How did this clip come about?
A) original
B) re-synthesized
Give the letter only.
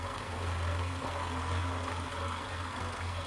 B